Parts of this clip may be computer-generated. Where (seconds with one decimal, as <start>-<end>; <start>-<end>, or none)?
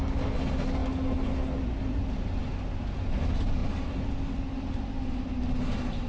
none